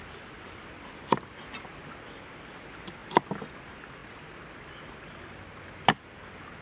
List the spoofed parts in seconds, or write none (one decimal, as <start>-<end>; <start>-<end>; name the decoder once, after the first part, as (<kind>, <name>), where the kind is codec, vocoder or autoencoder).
none